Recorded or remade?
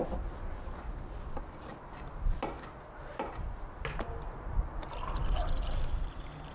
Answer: recorded